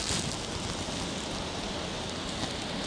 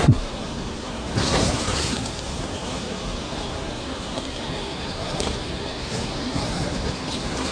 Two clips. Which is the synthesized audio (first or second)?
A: second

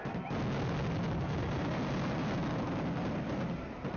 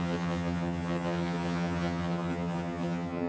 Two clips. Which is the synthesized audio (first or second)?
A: second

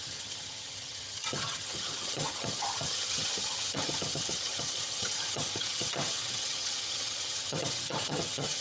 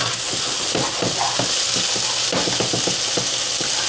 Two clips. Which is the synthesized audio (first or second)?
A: first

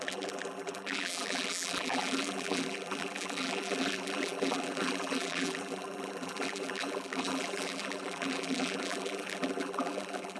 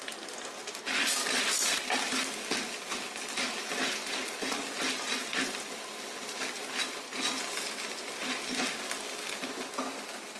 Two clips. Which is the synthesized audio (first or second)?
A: first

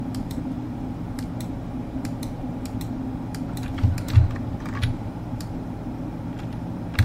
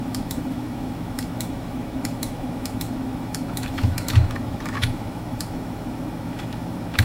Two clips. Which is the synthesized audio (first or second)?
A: second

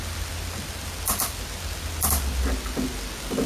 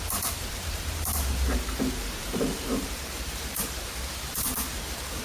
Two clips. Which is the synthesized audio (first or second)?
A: second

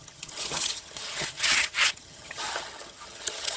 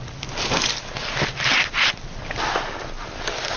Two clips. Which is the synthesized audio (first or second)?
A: first